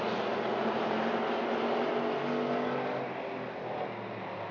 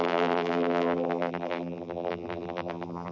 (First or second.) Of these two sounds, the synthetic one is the second